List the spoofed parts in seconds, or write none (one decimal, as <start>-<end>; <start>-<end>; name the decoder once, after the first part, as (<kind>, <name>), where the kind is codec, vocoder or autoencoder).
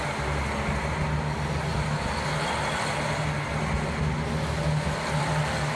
none